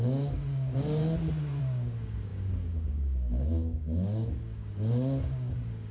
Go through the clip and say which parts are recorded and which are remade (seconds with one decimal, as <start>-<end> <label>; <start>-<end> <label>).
0.0-1.0 remade; 1.0-1.6 recorded; 1.6-5.9 remade